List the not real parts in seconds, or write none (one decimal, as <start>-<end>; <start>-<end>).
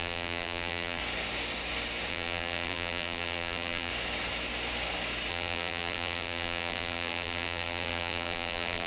0.0-1.0; 2.1-3.9; 5.3-8.9